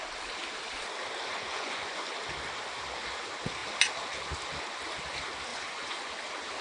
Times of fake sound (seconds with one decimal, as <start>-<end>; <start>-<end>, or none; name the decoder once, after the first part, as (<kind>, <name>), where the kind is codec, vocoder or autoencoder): 1.3-2.1 (vocoder, Vocos); 5.5-6.1